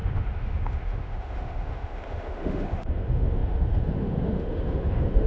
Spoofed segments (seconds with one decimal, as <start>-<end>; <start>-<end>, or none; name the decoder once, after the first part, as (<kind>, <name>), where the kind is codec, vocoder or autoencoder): 0.0-5.3 (autoencoder, DAC-VAE)